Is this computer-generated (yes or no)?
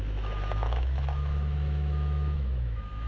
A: yes